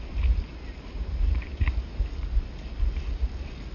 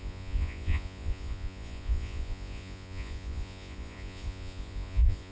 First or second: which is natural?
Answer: first